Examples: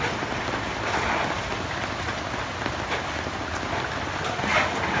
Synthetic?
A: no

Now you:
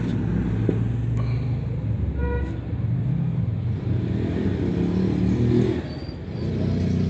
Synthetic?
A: no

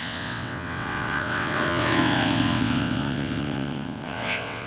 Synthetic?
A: yes